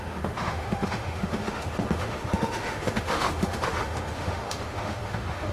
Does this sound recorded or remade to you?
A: remade